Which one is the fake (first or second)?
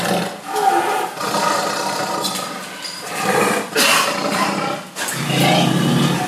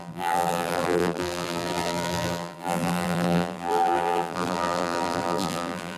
second